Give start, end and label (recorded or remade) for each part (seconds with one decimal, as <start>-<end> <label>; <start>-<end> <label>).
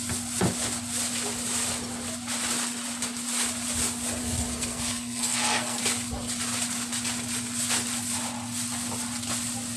0.0-4.2 recorded; 4.2-5.8 remade; 5.8-9.8 recorded